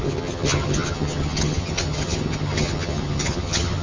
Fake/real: fake